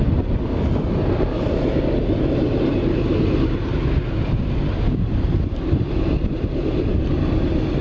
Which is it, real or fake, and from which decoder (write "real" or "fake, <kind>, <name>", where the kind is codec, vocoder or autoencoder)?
real